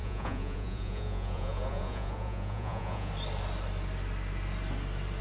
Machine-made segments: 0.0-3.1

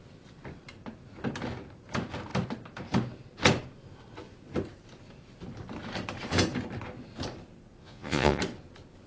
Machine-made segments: 7.8-8.4

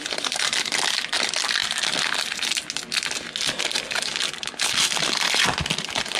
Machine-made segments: none

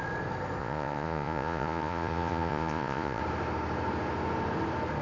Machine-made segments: 0.6-3.2

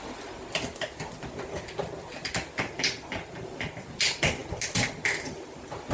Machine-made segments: none

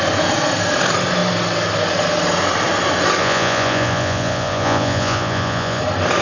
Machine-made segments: 3.2-5.8

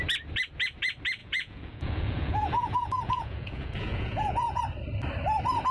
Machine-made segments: 1.2-4.6

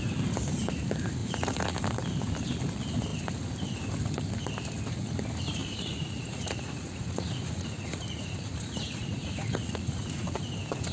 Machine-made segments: 1.2-1.8; 5.6-10.4